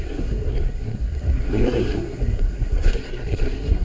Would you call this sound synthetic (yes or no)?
yes